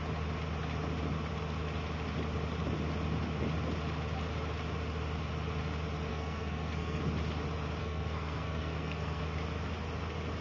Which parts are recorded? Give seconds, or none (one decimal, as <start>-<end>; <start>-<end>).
0.0-6.1; 7.0-7.8; 9.2-10.4